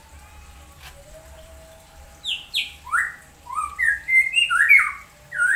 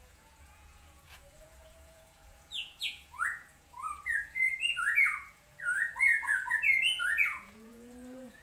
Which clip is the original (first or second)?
first